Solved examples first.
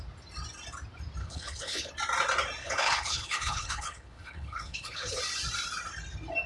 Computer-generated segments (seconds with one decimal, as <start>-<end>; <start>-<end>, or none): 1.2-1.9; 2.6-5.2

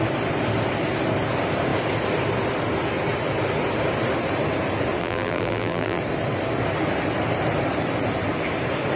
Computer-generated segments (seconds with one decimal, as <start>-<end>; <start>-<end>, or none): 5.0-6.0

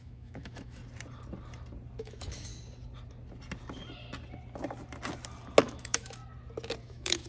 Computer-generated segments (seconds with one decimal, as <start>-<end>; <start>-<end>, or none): 0.0-0.8; 2.0-2.5; 5.6-6.2; 6.8-7.3

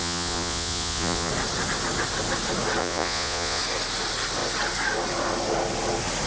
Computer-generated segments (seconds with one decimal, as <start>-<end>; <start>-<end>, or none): 0.0-1.3; 2.8-3.6

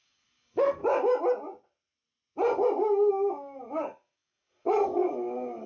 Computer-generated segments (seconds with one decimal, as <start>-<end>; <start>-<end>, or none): 0.0-0.8; 3.1-5.7

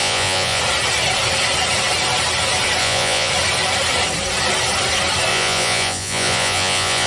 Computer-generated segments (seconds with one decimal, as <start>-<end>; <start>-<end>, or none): 0.0-0.6; 2.8-3.3; 5.3-7.1

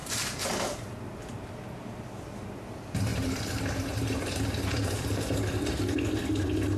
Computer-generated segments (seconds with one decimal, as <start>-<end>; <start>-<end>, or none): 0.0-0.5; 3.1-5.5

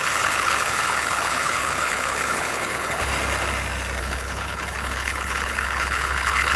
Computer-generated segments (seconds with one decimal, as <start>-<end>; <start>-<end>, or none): 0.0-3.1; 4.0-6.6